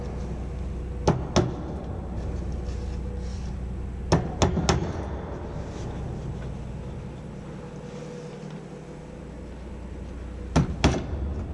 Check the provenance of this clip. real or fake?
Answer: real